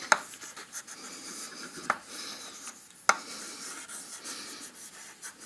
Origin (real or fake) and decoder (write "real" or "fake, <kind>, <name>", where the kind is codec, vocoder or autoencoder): real